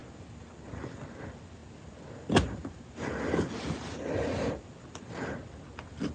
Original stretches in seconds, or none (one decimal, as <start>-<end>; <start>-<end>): 0.0-6.1